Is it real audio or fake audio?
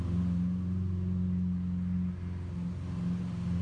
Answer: real